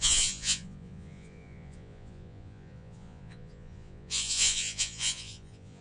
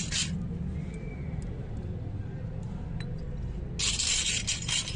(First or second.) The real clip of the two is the second